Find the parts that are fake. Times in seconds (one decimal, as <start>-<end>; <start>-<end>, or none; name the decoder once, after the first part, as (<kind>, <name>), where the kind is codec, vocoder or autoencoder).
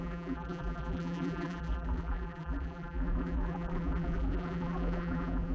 0.0-5.5 (vocoder, BigVGAN v2)